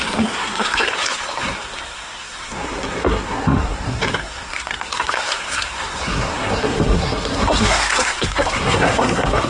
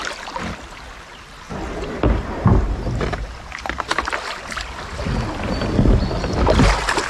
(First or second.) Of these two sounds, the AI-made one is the first